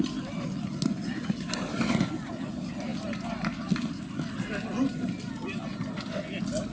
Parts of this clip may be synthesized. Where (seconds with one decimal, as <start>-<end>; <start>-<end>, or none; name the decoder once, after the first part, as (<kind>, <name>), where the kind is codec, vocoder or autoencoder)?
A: none

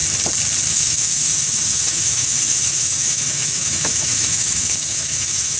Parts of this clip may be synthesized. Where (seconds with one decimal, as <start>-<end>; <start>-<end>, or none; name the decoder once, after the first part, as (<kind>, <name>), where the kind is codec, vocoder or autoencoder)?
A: 0.7-5.6 (autoencoder, DAC-VAE)

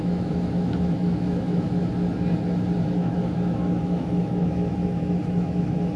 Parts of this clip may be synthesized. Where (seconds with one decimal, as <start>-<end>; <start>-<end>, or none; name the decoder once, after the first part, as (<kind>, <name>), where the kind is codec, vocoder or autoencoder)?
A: 0.0-1.9 (autoencoder, DAC-VAE); 2.8-6.0

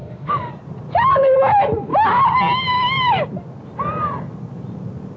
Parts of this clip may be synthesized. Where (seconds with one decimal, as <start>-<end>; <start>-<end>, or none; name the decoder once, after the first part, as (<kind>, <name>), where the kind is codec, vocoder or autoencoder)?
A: 0.0-0.5 (autoencoder, DAC-VAE)